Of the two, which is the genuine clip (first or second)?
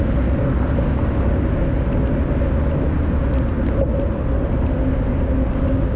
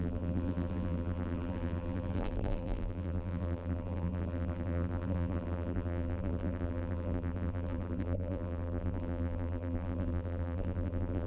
first